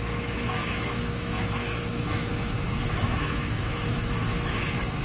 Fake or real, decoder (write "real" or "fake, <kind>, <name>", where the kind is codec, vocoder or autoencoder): fake, autoencoder, DAC-VAE